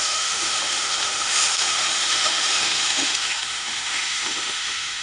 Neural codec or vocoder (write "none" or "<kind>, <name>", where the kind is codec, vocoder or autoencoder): autoencoder, DAC-VAE